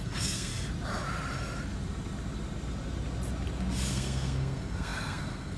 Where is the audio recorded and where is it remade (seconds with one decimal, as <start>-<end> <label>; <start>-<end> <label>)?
0.0-0.5 remade; 0.5-3.9 recorded; 3.9-5.6 remade